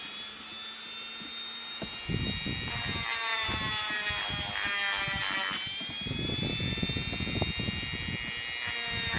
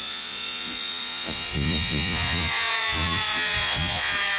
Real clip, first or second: first